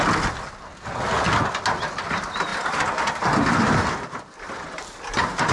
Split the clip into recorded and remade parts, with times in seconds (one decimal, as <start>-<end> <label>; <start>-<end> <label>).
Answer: 0.0-5.5 recorded